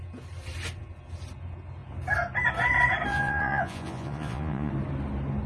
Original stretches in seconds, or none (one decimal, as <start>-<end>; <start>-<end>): 0.0-3.1; 4.7-5.5

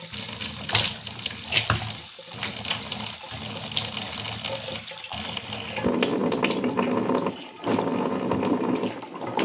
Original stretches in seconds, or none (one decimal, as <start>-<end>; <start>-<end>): 0.0-9.4

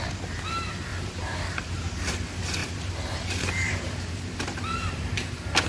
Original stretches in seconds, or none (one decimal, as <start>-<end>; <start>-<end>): 0.0-0.9; 2.1-2.6; 4.9-5.7

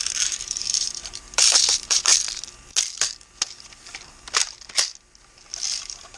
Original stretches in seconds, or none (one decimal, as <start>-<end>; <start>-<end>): 2.1-5.8

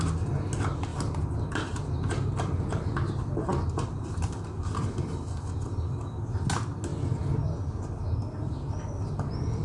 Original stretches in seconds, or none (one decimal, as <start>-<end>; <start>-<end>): 0.0-0.9; 4.1-9.6